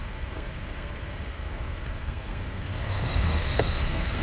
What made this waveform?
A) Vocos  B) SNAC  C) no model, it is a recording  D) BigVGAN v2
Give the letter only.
B